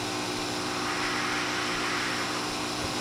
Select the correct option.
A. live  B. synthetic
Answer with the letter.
A